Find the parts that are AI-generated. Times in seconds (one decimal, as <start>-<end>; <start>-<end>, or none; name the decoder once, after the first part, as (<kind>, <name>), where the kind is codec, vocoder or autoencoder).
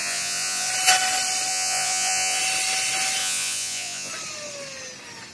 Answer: 0.0-0.7 (vocoder, Vocos); 1.5-2.4; 3.2-4.1